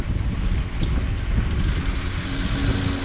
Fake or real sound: real